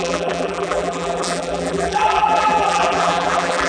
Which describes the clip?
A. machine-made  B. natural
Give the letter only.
A